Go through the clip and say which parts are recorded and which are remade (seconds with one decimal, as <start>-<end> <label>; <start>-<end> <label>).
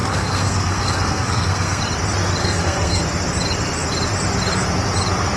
0.0-1.8 remade; 1.8-2.4 recorded; 2.4-3.0 remade; 3.0-5.4 recorded